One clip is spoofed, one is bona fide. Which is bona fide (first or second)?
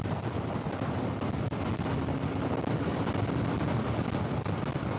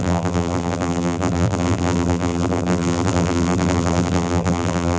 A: first